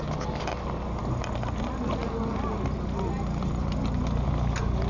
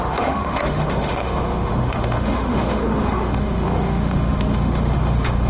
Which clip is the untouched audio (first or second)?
first